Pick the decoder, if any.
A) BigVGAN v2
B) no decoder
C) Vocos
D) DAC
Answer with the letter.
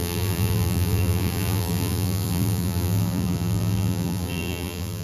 A